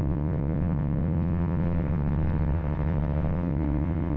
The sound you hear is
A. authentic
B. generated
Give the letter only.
B